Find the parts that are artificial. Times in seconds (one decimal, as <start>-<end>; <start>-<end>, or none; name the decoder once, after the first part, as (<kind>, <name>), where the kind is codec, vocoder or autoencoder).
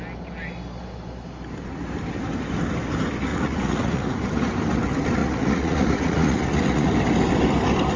3.3-4.1 (vocoder, Vocos); 5.2-6.9